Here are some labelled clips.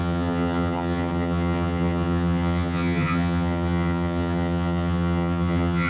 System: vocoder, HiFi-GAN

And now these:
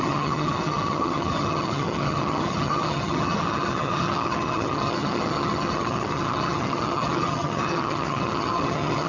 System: vocoder, HiFi-GAN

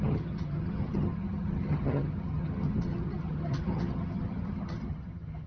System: vocoder, HiFi-GAN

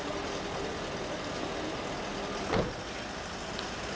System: none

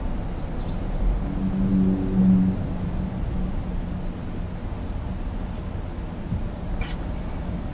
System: none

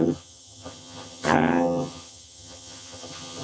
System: vocoder, HiFi-GAN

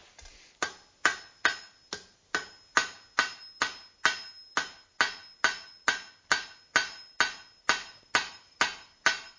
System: none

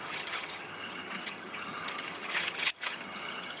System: vocoder, HiFi-GAN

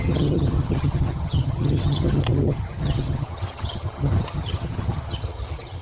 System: vocoder, HiFi-GAN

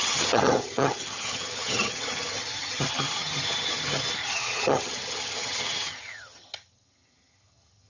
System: vocoder, HiFi-GAN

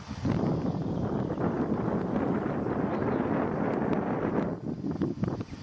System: none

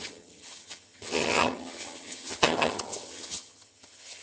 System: vocoder, HiFi-GAN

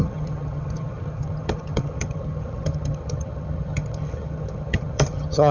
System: vocoder, HiFi-GAN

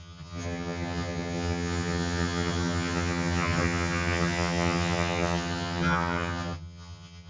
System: vocoder, HiFi-GAN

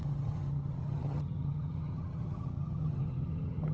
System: vocoder, HiFi-GAN